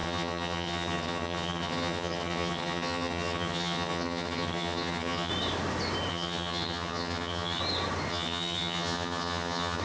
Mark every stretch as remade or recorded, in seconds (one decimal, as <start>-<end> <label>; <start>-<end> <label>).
0.0-5.3 remade; 5.3-6.1 recorded; 6.1-7.6 remade; 7.6-8.1 recorded; 8.1-9.8 remade